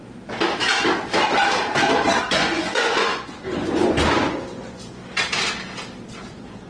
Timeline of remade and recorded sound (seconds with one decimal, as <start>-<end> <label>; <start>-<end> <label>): 0.0-2.2 recorded; 2.2-5.0 remade; 5.0-6.2 recorded; 6.2-6.7 remade